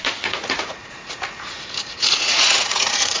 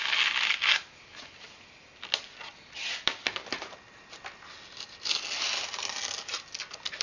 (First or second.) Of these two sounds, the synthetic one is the first